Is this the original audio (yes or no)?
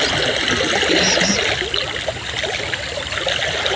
yes